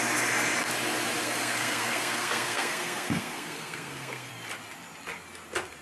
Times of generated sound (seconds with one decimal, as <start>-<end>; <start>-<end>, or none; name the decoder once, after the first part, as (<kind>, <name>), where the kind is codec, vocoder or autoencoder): 1.2-4.3 (codec, SNAC)